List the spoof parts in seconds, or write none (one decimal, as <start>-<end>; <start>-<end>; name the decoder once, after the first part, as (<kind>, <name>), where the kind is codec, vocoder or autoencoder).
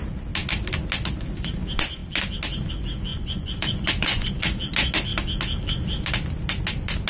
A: 3.1-4.3 (vocoder, Vocos)